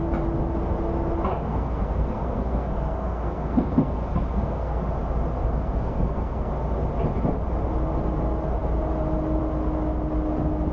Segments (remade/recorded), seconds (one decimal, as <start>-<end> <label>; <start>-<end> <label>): 0.0-1.5 recorded; 1.5-4.8 remade; 4.8-5.4 recorded; 5.4-6.5 remade; 6.5-10.7 recorded